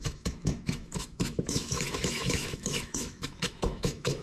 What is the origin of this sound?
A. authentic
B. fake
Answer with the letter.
B